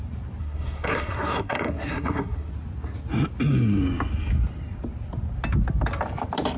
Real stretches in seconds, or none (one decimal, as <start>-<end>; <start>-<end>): 0.0-0.4; 2.5-6.6